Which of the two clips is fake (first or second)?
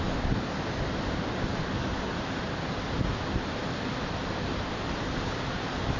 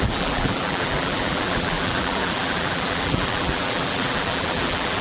second